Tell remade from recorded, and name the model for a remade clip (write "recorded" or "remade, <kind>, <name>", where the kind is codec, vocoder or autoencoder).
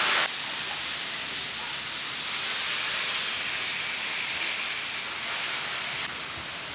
recorded